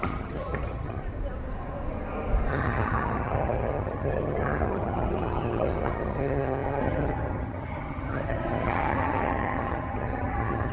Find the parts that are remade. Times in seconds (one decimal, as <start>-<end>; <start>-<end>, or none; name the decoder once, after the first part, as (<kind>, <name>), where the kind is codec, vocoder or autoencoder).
0.0-1.0 (vocoder, HiFi-GAN); 2.5-10.7